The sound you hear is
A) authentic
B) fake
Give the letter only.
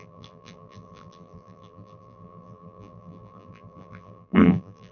B